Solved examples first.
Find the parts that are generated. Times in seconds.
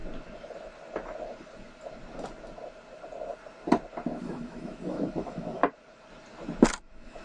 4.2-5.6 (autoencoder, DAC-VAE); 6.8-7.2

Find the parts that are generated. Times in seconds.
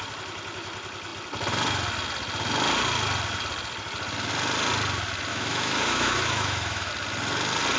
5.3-6.9 (autoencoder, DAC-VAE)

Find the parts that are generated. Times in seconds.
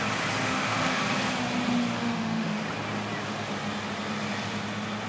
0.4-1.0 (autoencoder, DAC-VAE); 2.0-2.6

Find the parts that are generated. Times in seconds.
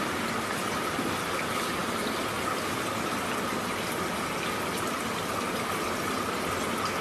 none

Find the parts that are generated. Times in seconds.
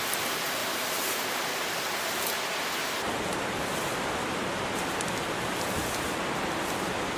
none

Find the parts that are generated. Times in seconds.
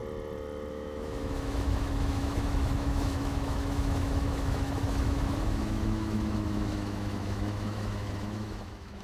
0.7-9.0 (autoencoder, DAC-VAE)